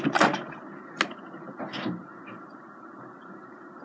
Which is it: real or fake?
real